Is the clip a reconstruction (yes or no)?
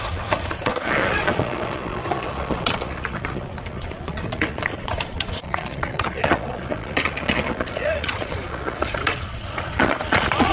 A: yes